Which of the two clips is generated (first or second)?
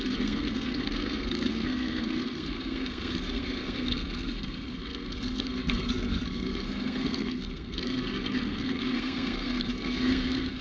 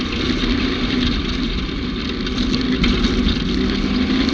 first